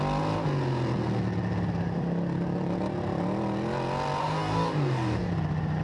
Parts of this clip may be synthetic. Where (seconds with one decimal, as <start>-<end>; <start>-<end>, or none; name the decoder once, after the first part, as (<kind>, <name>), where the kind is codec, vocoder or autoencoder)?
4.2-5.3 (codec, DAC)

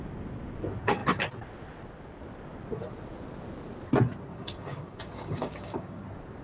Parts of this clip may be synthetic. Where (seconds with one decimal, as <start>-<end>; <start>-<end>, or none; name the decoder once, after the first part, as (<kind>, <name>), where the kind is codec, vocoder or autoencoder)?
4.3-6.0 (codec, DAC)